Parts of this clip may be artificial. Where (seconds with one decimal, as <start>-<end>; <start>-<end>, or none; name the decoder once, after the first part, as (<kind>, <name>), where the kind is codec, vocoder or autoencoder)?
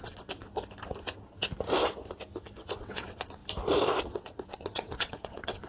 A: 0.0-0.5 (vocoder, WaveNeXt); 2.8-3.4; 4.0-5.7